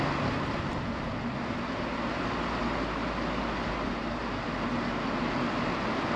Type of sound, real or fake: real